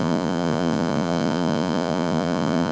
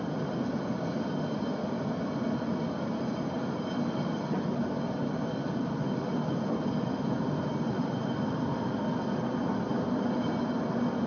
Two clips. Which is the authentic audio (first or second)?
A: second